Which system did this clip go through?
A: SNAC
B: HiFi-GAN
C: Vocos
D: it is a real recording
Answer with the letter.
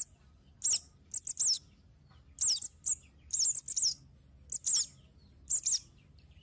D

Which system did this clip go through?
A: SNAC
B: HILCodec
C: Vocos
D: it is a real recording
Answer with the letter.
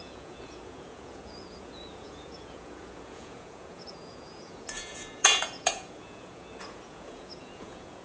C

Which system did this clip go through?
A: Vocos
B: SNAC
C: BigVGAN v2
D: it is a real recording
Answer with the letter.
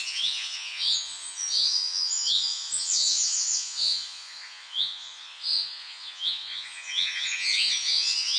A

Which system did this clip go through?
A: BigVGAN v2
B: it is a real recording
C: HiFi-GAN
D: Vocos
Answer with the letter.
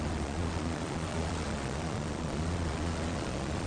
D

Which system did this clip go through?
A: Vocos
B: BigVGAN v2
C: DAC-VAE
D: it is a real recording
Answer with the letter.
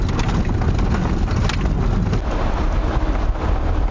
D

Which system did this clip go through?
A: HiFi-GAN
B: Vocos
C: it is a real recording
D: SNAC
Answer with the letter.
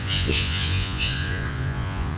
B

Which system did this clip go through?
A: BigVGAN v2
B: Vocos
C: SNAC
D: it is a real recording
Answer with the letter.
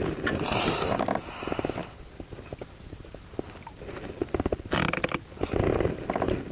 D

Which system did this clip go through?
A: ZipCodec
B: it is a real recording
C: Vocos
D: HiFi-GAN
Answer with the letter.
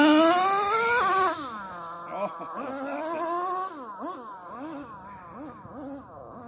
B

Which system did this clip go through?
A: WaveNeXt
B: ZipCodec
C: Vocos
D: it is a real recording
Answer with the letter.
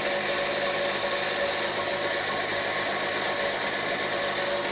D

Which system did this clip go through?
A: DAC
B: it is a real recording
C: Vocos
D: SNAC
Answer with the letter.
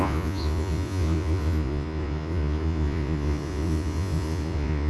C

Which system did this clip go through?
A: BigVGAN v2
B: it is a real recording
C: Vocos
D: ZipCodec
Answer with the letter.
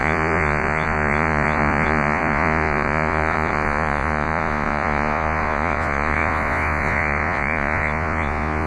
C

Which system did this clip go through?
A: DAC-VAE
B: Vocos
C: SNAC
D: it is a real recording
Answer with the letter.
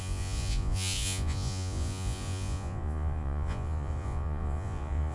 B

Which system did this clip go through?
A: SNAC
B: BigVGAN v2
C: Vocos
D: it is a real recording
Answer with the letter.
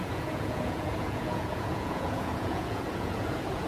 C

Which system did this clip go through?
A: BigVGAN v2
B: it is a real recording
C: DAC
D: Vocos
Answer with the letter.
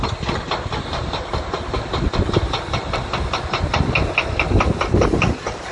B